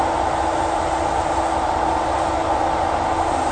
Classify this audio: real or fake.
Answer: real